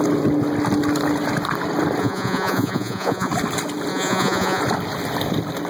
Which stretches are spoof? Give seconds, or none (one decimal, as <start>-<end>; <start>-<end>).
2.0-3.3; 3.9-4.6